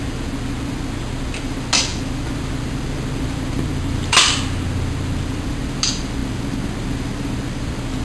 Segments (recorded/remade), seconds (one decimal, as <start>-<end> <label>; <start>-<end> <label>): 0.0-8.0 recorded